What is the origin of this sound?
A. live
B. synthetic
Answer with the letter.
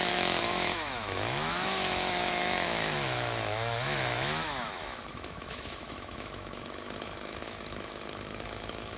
B